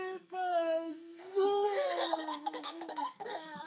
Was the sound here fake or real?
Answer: fake